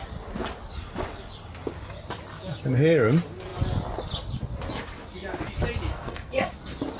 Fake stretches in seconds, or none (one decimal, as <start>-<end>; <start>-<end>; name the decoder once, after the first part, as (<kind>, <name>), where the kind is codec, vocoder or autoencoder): 5.9-6.5 (codec, SNAC)